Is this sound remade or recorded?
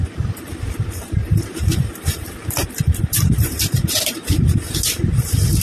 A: remade